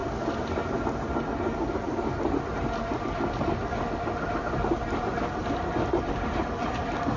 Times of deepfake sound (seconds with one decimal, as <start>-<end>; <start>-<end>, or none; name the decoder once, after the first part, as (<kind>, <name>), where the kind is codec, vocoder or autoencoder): none